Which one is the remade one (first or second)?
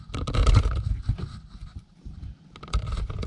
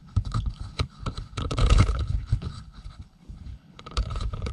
second